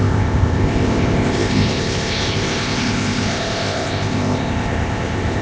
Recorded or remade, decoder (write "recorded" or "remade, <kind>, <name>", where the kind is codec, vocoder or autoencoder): remade, codec, ZipCodec